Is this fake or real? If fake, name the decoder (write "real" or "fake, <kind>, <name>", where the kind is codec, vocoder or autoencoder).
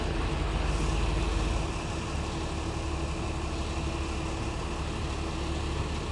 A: real